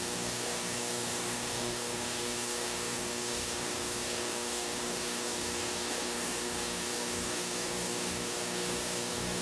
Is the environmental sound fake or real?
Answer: fake